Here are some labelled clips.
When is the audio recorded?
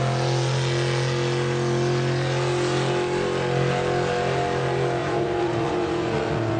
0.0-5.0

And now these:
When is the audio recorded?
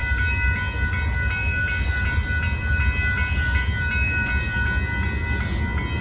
0.0-6.0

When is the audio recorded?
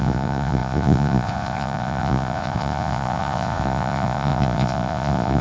none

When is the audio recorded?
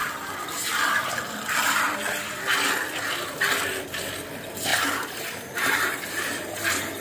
0.0-4.7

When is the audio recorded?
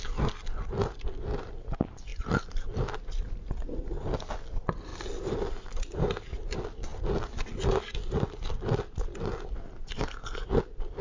0.0-11.0